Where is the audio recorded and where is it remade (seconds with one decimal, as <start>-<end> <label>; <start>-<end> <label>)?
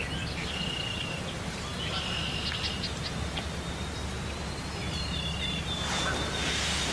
0.0-6.9 recorded